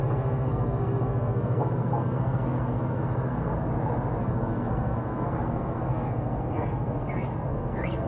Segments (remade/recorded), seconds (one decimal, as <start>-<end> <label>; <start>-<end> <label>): 0.0-3.7 remade; 3.7-4.2 recorded; 4.2-8.1 remade